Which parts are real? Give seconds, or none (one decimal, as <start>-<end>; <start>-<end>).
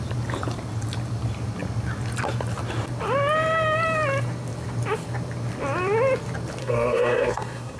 0.0-6.6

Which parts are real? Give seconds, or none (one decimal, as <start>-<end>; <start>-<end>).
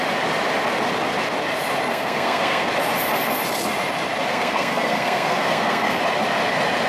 0.0-1.9; 2.7-4.3; 6.0-6.9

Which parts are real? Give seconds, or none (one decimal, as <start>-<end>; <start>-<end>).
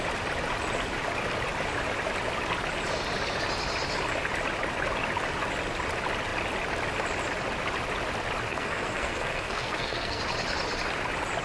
0.0-8.5; 10.2-11.4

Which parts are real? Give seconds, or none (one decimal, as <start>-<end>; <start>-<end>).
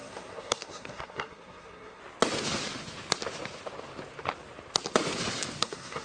2.0-5.6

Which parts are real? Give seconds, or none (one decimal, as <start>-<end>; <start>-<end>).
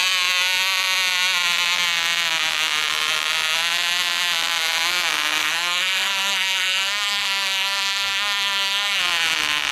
0.0-5.4; 9.0-9.7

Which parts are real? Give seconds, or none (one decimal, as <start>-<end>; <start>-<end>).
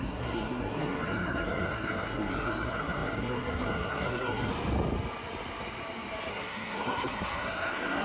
4.5-6.3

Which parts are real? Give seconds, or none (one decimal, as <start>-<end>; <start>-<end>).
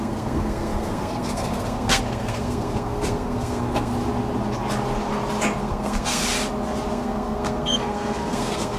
3.9-5.6; 6.2-6.9